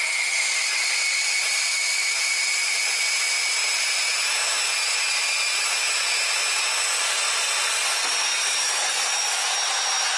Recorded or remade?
recorded